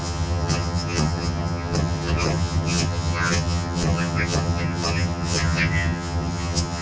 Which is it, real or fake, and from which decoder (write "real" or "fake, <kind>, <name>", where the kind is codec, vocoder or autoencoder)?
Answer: fake, vocoder, HiFi-GAN